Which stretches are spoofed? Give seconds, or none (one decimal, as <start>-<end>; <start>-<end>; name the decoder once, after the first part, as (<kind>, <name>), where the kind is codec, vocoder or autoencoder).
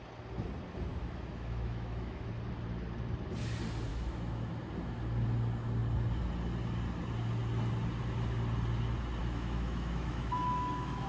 0.9-2.3 (autoencoder, DAC-VAE); 3.9-4.5; 9.2-11.1